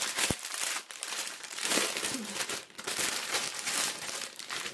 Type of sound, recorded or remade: remade